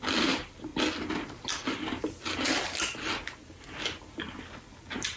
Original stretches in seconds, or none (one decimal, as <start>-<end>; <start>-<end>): 0.0-5.2